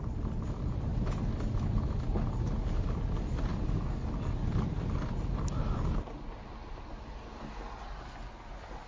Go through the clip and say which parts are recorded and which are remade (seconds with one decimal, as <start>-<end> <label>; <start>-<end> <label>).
0.0-8.9 recorded

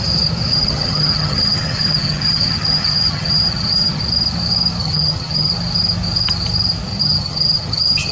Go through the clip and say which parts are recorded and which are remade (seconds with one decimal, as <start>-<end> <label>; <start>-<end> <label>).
0.0-0.5 recorded; 0.5-4.0 remade; 4.0-4.8 recorded; 4.8-5.5 remade; 5.5-6.9 recorded; 6.9-8.1 remade